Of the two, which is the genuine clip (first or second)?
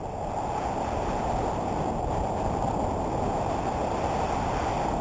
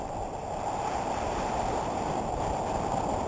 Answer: first